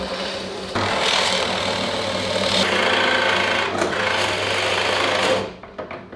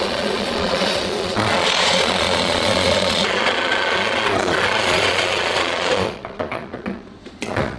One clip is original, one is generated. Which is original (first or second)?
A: first